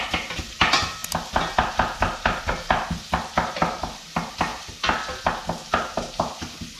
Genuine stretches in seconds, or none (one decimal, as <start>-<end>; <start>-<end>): 0.0-6.8